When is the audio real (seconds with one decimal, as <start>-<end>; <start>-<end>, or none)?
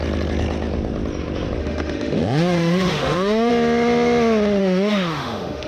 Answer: 0.0-1.6; 3.5-4.6